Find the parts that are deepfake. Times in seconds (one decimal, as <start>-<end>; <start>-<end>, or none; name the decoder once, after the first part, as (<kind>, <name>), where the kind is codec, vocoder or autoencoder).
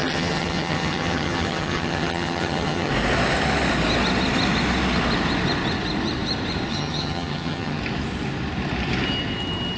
0.0-2.9 (vocoder, HiFi-GAN); 6.7-7.8